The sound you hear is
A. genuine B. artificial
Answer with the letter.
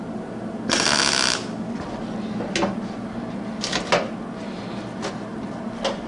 A